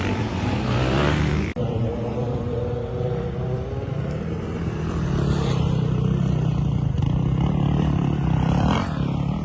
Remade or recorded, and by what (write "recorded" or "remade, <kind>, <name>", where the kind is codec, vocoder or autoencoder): recorded